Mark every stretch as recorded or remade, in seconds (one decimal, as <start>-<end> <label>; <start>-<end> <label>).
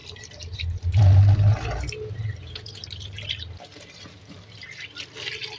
0.0-3.4 remade; 3.4-5.6 recorded